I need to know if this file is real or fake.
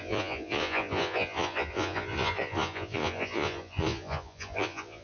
fake